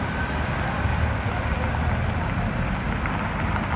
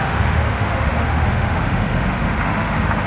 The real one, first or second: first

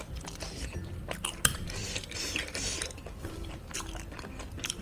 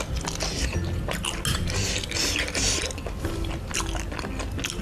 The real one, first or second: second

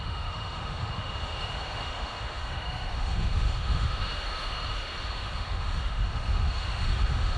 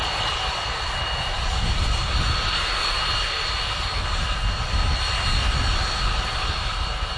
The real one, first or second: second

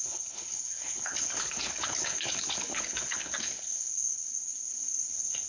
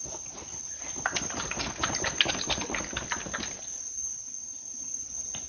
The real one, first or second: second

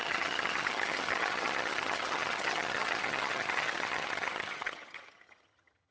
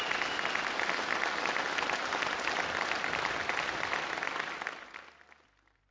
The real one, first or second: second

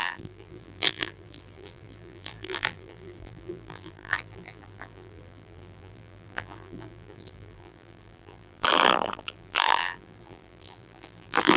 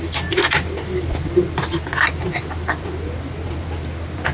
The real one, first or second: second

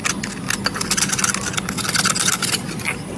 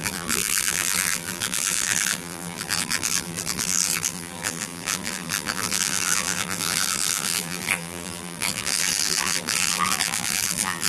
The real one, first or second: first